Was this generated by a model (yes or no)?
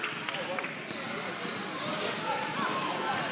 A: no